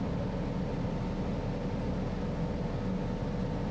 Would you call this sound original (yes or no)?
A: yes